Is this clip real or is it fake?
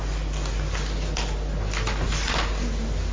real